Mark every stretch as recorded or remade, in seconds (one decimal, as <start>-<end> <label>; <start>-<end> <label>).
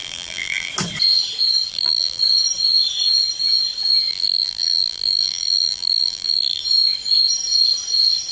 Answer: 0.0-0.7 remade; 0.7-1.7 recorded; 1.7-2.2 remade; 2.2-4.1 recorded; 4.1-6.6 remade; 6.6-8.3 recorded